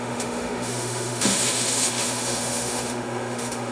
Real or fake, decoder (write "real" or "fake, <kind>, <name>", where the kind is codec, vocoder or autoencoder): fake, autoencoder, DAC-VAE